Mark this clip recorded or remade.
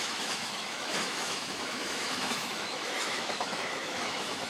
remade